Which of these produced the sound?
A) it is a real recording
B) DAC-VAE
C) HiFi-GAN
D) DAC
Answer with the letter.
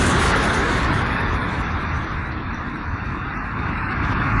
D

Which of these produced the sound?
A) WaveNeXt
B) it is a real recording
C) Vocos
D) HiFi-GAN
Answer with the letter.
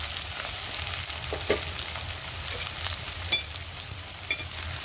B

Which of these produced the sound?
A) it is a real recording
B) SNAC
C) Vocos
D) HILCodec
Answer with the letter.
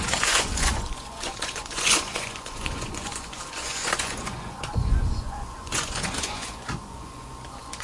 C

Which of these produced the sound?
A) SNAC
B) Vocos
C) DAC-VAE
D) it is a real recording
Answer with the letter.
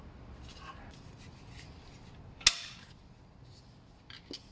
D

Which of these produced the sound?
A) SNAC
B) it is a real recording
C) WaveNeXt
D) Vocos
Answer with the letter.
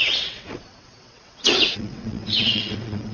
C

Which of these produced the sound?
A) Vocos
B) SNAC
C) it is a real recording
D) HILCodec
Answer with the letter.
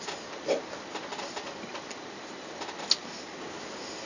C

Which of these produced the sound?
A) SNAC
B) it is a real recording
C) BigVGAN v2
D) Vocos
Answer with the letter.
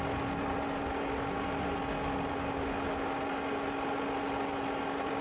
B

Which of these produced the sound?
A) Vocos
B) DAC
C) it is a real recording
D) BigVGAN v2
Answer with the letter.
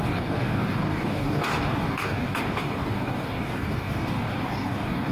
B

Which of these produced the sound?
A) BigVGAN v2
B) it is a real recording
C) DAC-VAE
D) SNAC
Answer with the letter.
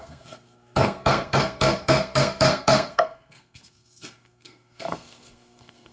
D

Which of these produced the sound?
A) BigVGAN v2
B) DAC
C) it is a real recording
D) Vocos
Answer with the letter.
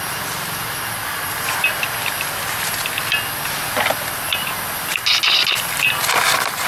C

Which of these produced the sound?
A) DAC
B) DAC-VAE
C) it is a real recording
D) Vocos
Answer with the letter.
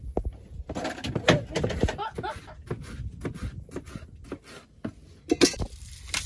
C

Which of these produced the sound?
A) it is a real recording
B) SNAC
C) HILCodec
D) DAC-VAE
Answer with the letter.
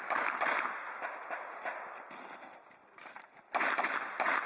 A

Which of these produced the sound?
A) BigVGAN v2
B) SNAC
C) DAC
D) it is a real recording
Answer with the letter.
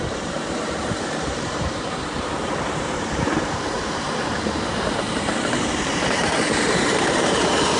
A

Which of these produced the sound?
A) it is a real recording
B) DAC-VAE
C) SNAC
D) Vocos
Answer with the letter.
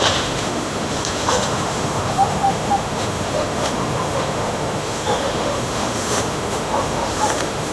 B